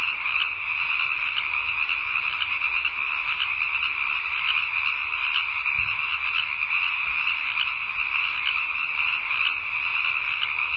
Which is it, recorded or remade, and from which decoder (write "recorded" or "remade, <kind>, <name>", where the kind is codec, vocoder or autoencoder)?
recorded